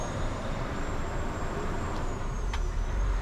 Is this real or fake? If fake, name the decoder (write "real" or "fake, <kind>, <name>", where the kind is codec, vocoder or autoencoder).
fake, vocoder, BigVGAN v2